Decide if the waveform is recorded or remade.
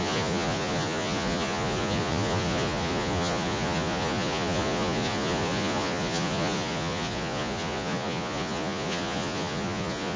remade